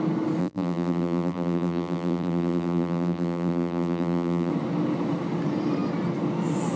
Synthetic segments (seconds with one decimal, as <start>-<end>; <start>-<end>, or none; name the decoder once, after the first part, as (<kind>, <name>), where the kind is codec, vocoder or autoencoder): 0.4-4.5 (vocoder, BigVGAN v2)